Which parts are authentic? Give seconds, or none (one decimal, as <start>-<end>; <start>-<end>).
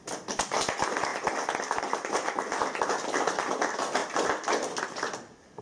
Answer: 0.0-5.6